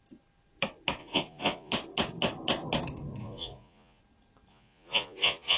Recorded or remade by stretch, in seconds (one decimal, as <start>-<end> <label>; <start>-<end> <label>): 0.0-1.0 recorded; 1.0-1.7 remade; 1.7-3.2 recorded; 3.2-4.0 remade; 4.0-4.5 recorded; 4.5-5.6 remade